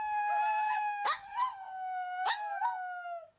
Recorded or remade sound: remade